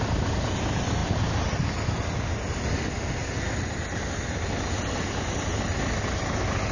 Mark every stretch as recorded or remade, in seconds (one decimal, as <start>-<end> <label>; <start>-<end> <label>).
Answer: 0.0-6.7 recorded